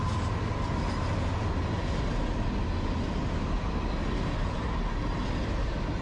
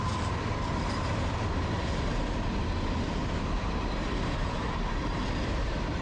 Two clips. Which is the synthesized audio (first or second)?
second